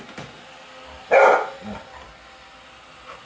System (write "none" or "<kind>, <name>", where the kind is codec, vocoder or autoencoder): none